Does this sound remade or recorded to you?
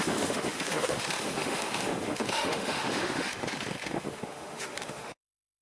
remade